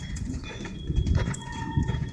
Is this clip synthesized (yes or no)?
yes